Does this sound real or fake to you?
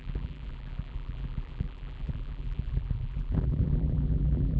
fake